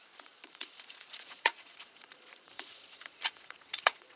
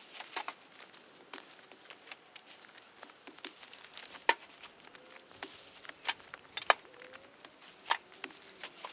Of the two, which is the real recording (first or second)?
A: second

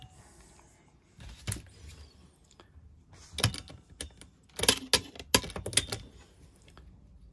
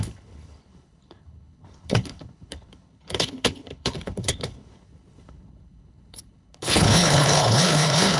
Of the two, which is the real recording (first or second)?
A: first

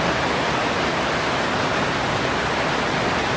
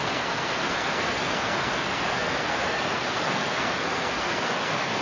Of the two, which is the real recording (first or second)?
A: first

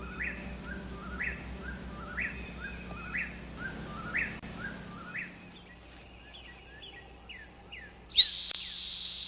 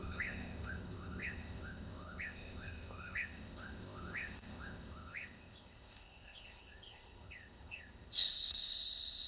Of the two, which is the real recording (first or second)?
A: first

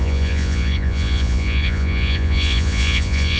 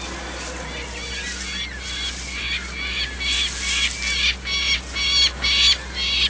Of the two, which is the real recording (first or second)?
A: second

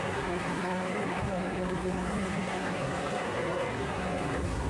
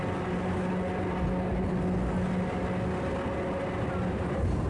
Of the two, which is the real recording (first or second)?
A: second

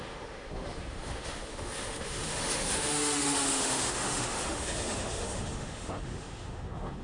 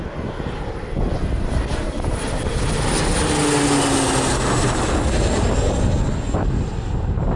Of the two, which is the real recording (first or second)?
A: second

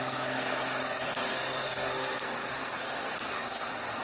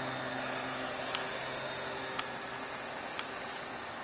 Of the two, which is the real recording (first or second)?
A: second